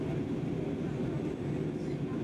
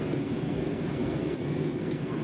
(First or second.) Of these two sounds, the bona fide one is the first